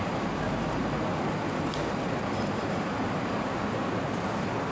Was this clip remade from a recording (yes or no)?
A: no